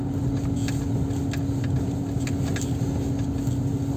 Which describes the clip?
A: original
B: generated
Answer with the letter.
A